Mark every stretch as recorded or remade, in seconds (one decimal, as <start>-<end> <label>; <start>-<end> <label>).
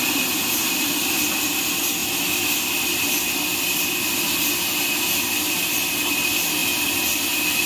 0.0-7.7 recorded